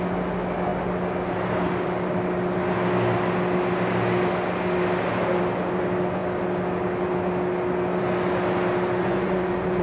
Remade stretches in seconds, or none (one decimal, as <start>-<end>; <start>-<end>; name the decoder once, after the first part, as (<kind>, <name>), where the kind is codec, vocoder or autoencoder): 9.0-9.8 (vocoder, Vocos)